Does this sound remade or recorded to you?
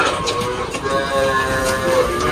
remade